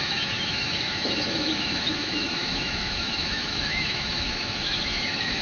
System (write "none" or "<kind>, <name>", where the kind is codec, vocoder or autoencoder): autoencoder, DAC-VAE